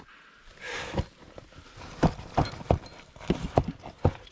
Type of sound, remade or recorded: recorded